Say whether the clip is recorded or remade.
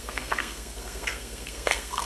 remade